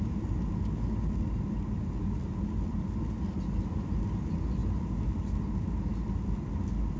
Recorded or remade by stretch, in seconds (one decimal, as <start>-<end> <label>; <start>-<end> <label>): 0.0-7.0 recorded